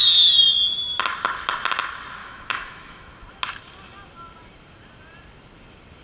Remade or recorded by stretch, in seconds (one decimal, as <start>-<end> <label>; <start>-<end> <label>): 0.0-2.2 recorded; 2.2-3.2 remade; 3.2-6.0 recorded

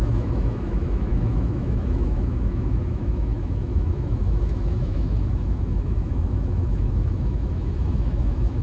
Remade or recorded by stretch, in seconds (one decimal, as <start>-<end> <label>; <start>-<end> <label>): 0.0-8.6 remade

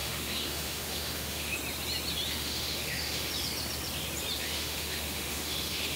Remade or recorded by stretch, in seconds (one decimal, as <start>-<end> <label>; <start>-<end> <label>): 0.0-1.5 remade; 1.5-2.3 recorded; 2.3-3.3 remade; 3.3-4.4 recorded; 4.4-6.0 remade

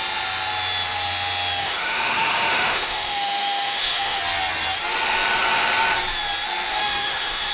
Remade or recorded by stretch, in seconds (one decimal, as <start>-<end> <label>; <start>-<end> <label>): 0.0-1.6 recorded; 1.6-4.2 remade; 4.2-6.7 recorded; 6.7-7.5 remade